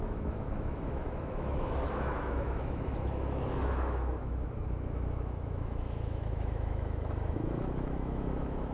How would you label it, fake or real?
fake